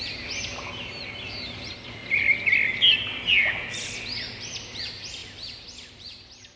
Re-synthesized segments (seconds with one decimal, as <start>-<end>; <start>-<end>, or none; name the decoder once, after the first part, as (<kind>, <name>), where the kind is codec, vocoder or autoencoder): none